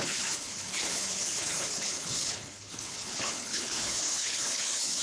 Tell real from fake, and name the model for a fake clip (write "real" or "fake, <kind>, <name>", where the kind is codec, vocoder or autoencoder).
fake, codec, HILCodec